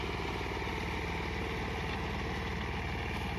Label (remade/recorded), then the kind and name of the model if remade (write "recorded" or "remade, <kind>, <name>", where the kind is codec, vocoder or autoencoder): recorded